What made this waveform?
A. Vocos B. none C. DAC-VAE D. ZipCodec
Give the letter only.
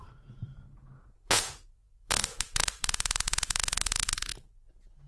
A